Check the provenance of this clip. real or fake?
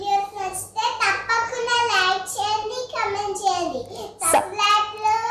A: real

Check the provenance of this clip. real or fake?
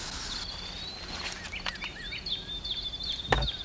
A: real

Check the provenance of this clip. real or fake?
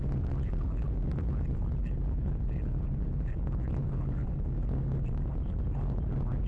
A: real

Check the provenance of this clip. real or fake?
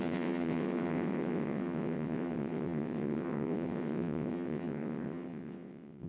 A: fake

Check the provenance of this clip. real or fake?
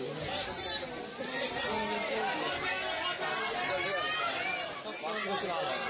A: real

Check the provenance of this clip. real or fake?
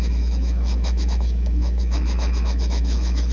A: fake